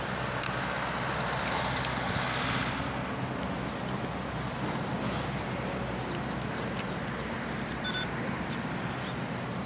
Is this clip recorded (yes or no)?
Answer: yes